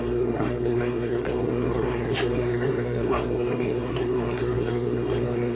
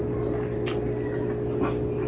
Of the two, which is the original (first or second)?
second